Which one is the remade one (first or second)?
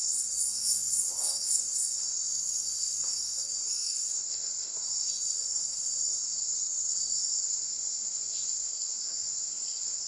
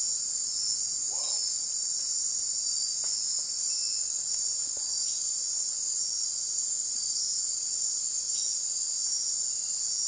first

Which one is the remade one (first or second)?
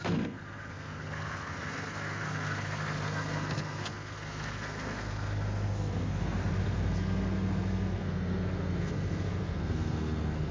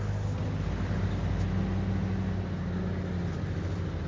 first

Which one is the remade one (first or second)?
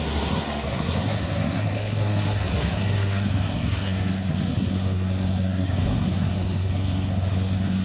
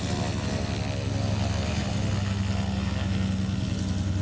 first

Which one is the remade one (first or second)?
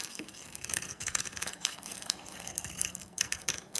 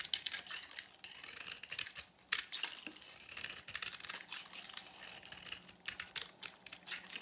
first